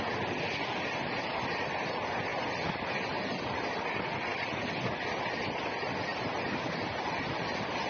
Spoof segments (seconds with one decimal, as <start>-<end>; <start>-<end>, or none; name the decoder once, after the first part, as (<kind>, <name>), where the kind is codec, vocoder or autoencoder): none